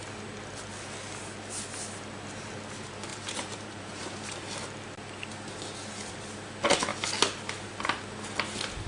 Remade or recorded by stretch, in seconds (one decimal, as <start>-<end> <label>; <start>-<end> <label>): 0.0-3.1 recorded; 3.1-4.5 remade; 4.5-8.9 recorded